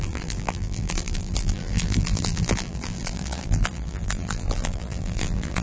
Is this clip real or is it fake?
fake